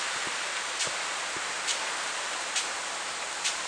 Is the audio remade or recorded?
remade